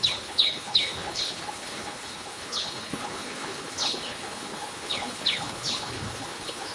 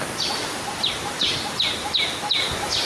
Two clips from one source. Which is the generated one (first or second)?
first